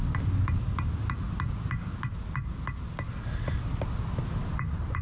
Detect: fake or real real